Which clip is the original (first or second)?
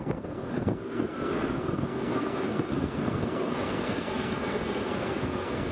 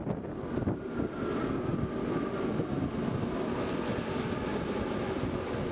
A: second